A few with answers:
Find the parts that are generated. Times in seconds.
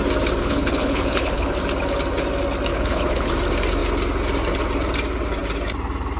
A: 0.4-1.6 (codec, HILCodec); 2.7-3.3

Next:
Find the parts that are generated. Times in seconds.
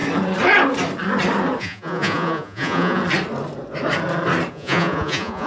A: 1.6-3.0 (vocoder, Vocos); 4.5-5.5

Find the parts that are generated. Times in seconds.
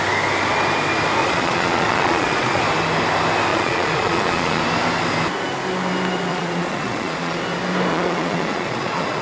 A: 1.2-2.6 (vocoder, Vocos); 3.5-4.6; 6.3-7.4; 7.9-9.2